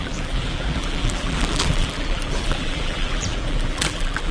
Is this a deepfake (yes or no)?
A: yes